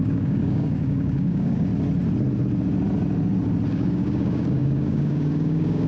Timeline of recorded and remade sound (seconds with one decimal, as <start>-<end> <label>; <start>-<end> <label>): 0.0-1.7 remade; 1.7-3.7 recorded; 3.7-5.9 remade